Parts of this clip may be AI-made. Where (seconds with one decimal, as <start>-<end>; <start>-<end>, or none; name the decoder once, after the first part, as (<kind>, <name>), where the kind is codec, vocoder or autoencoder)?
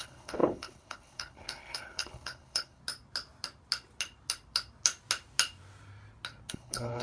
0.0-2.8 (codec, HILCodec); 6.5-7.0